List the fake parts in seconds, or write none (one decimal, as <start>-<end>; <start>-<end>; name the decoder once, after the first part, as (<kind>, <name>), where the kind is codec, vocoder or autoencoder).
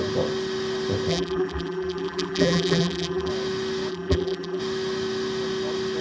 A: 1.1-3.3 (vocoder, BigVGAN v2); 3.9-4.6